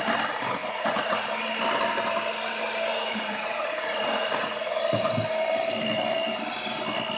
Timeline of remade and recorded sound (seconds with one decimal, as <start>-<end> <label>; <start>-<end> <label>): 0.0-0.6 recorded; 0.6-1.3 remade; 1.3-2.9 recorded; 2.9-4.8 remade; 4.8-7.2 recorded